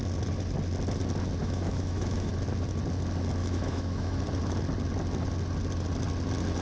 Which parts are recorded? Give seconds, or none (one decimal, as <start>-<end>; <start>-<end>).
0.0-1.4; 2.3-3.4; 4.2-6.6